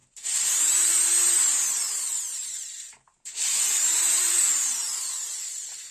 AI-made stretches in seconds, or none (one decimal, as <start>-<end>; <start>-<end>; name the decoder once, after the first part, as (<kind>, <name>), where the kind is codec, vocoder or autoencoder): 0.0-4.8 (vocoder, BigVGAN v2)